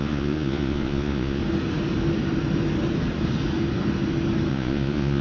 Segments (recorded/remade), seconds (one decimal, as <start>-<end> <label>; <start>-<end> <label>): 0.0-1.4 remade; 1.4-4.5 recorded; 4.5-5.2 remade